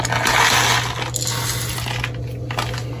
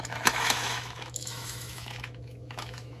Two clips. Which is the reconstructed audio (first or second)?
second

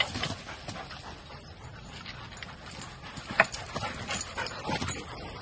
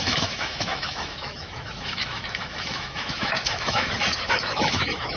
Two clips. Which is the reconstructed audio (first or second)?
second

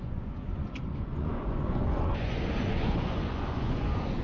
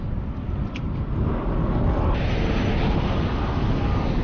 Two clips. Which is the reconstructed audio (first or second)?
first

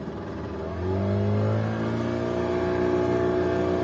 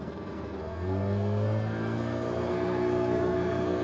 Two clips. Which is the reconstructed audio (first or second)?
second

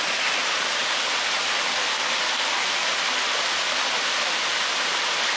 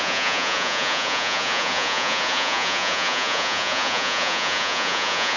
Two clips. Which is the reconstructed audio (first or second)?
second